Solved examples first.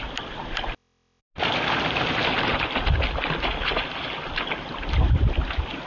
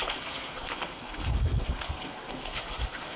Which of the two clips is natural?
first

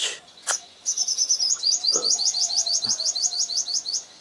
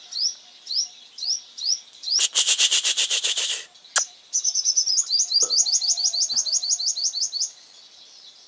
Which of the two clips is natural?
second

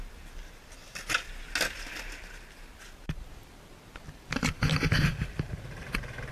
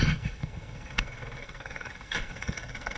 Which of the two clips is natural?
first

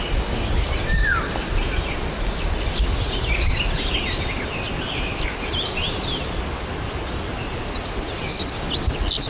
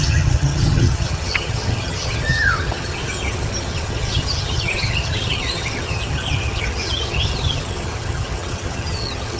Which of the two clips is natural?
first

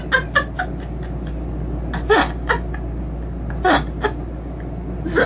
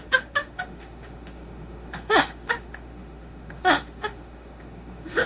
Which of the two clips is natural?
first